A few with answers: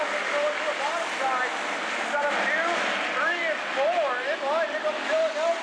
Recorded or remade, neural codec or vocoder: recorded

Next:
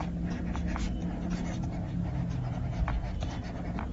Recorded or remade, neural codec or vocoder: recorded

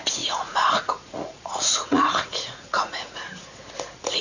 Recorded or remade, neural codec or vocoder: remade, vocoder, Vocos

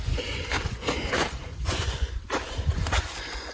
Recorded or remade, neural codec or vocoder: remade, vocoder, Vocos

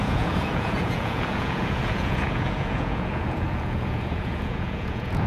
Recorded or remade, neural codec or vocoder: remade, vocoder, Vocos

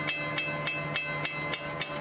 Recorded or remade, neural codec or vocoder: recorded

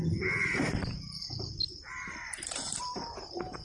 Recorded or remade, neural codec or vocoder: remade, vocoder, BigVGAN v2